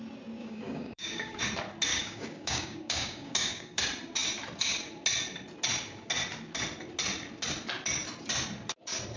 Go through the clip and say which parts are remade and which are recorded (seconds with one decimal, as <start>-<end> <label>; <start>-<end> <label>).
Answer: 0.0-0.4 recorded; 0.4-1.4 remade; 1.4-1.9 recorded; 1.9-3.8 remade; 3.8-9.2 recorded